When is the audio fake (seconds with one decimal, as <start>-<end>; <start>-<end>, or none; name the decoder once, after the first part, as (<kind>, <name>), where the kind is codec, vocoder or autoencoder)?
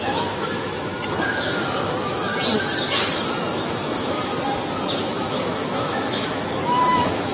0.0-2.3 (autoencoder, DAC-VAE); 3.1-4.3; 5.0-7.3